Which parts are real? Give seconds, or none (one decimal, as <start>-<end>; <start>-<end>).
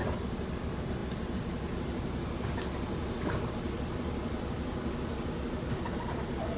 0.0-6.6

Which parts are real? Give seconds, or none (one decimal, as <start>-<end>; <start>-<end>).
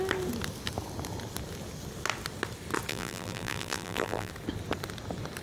0.0-2.9; 4.3-5.4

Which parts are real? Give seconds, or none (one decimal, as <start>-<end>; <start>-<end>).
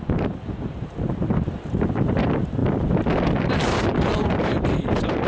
2.6-3.5